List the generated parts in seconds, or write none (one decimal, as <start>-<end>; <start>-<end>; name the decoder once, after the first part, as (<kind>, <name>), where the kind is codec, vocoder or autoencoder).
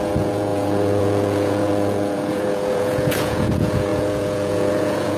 0.0-5.2 (vocoder, Vocos)